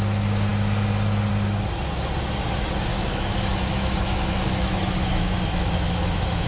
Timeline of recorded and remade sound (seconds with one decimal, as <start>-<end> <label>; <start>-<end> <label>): 0.0-2.9 recorded; 2.9-6.5 remade